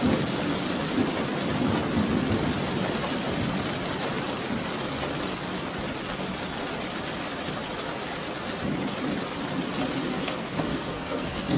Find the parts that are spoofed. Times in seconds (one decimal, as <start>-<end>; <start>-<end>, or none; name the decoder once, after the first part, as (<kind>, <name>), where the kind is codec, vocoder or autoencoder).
10.0-11.6 (codec, SNAC)